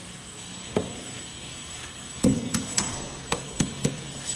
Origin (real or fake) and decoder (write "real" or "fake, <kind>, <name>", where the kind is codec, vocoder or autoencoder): fake, codec, SNAC